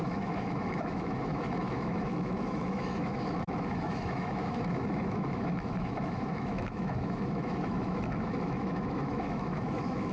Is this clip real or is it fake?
fake